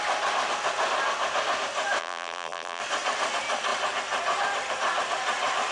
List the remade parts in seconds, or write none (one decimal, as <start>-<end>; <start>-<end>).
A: 2.0-2.8